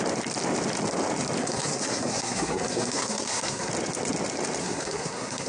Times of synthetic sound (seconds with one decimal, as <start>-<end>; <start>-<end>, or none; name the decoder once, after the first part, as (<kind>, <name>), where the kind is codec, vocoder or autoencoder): 1.4-3.7 (codec, SNAC); 4.6-5.5